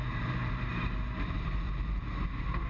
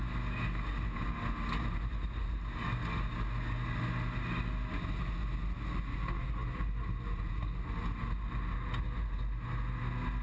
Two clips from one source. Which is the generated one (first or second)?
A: first